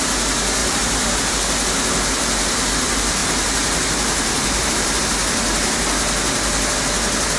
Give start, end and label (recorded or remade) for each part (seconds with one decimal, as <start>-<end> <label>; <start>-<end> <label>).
0.0-0.6 recorded; 0.6-1.3 remade; 1.3-3.2 recorded; 3.2-5.0 remade; 5.0-7.4 recorded